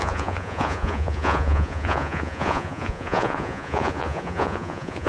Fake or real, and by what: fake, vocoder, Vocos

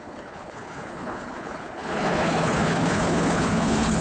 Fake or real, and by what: fake, codec, HILCodec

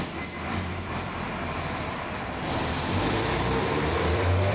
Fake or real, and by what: fake, vocoder, BigVGAN v2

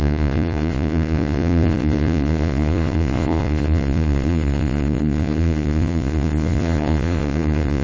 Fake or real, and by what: fake, vocoder, Vocos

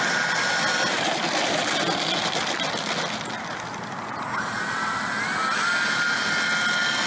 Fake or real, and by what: real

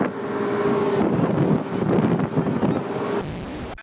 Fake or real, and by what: real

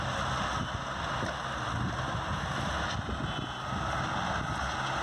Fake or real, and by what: real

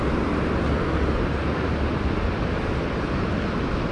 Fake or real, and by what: real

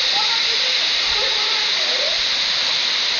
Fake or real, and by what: real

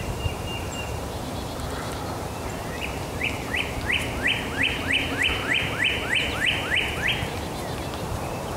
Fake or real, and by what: fake, vocoder, BigVGAN v2